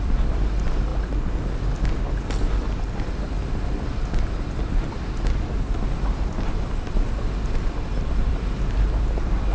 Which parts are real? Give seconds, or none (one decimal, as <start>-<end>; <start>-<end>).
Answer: 0.9-4.9